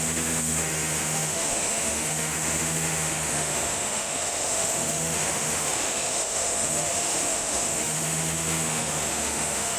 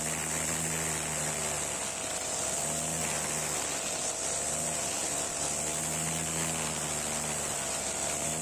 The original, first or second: second